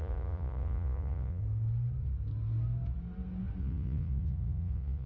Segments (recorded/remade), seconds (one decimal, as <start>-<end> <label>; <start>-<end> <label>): 0.0-1.4 remade; 1.4-3.6 recorded; 3.6-5.1 remade